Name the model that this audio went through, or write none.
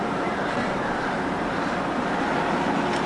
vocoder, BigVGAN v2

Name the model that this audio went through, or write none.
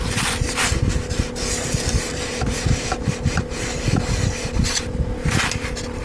none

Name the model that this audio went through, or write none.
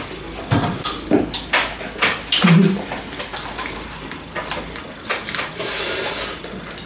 none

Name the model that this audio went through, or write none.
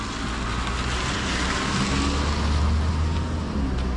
none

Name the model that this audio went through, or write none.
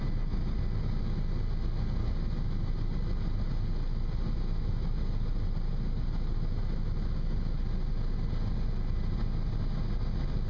none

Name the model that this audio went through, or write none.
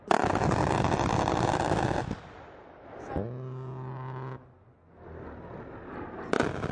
none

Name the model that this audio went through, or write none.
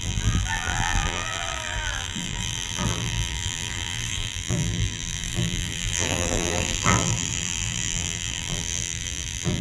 vocoder, BigVGAN v2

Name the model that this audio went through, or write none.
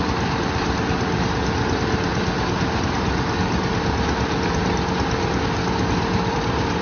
none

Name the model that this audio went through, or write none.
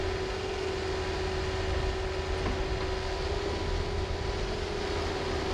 none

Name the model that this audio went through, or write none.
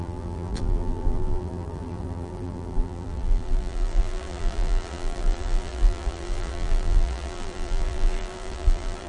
vocoder, BigVGAN v2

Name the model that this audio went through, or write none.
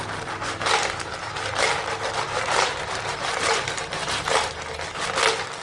vocoder, BigVGAN v2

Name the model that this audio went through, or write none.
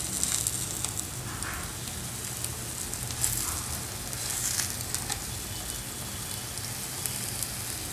none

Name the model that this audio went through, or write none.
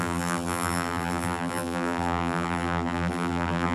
vocoder, BigVGAN v2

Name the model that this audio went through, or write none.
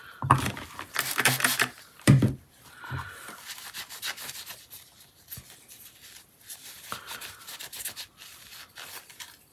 vocoder, BigVGAN v2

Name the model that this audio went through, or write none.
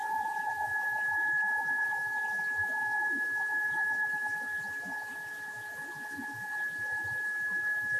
none